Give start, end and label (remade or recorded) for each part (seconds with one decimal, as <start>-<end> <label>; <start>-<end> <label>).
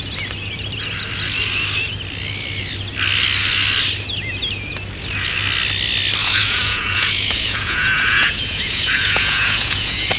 0.0-6.2 recorded; 6.2-10.2 remade